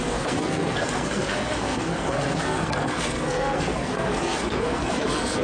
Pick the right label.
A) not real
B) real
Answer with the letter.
A